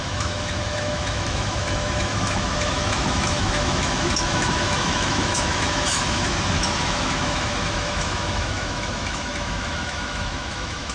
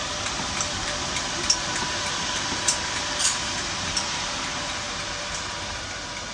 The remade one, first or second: first